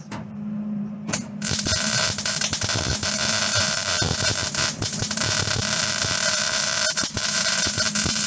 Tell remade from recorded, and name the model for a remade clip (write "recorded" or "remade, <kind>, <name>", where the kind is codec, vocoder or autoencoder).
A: remade, vocoder, BigVGAN v2